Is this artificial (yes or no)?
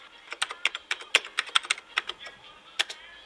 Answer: no